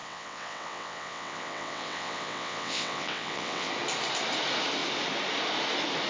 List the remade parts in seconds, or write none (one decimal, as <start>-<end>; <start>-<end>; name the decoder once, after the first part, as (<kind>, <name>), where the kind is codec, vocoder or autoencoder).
0.0-3.7 (vocoder, WaveNeXt)